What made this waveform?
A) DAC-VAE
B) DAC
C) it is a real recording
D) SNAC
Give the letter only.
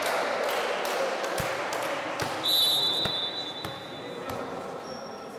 C